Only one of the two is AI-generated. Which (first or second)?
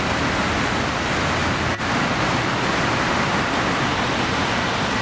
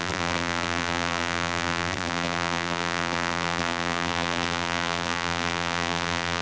second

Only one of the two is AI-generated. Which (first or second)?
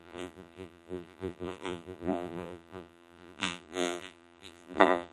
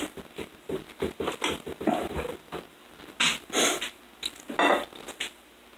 first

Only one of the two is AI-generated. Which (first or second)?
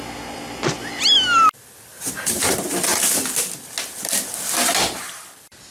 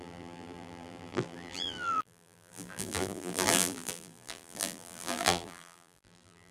second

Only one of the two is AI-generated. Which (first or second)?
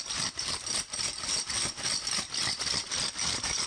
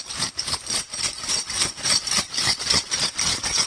second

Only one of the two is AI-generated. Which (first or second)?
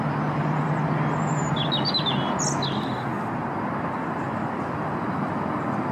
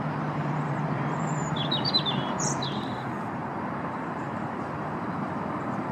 second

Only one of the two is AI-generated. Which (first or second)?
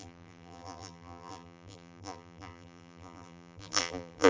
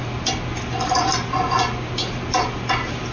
first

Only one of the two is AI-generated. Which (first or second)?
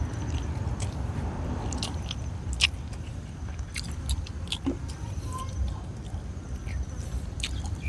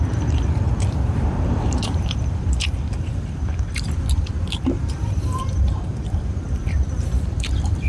second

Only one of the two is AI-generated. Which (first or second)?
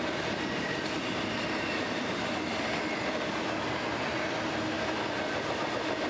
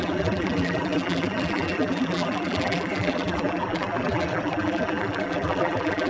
second